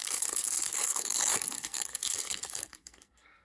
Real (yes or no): no